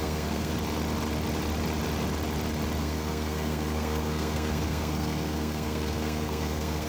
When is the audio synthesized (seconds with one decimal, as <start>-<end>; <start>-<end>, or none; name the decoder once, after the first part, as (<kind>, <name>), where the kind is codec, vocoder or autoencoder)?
0.0-0.5 (codec, SNAC); 2.8-6.9